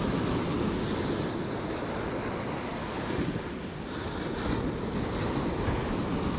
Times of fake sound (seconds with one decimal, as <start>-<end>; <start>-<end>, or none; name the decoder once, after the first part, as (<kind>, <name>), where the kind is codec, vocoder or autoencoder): none